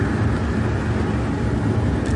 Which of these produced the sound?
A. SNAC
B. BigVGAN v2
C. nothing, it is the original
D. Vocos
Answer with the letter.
C